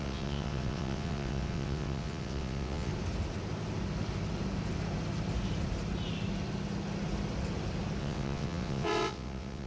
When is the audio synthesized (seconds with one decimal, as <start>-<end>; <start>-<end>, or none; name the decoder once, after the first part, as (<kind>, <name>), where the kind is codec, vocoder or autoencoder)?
0.0-2.9 (vocoder, WaveNeXt); 8.0-9.7